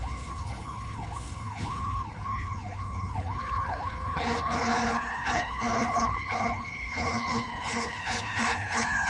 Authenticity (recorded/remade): remade